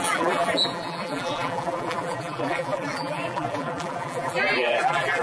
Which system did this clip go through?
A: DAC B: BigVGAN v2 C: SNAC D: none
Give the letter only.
B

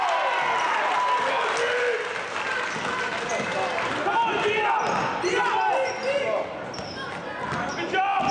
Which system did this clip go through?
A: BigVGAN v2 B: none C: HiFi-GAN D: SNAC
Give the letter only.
B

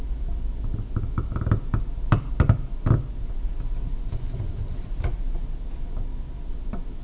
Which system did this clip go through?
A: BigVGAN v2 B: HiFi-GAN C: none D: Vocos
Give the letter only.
C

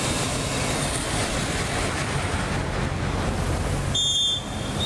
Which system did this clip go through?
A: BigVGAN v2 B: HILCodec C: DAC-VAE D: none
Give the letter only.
D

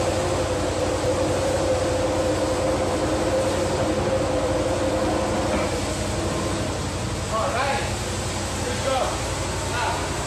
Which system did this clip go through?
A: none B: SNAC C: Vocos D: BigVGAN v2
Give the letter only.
A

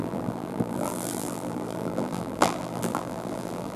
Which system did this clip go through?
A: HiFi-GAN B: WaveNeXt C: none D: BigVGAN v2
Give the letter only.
D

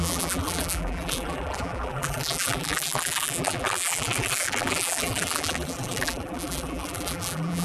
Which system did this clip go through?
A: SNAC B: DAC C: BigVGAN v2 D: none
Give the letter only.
C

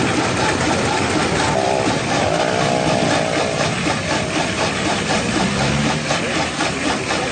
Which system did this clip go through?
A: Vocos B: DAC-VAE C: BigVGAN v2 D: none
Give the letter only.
C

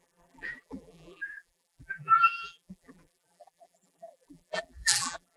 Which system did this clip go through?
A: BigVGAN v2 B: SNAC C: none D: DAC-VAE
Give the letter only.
A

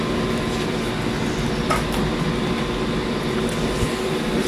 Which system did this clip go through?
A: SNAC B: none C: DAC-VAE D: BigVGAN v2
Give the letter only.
B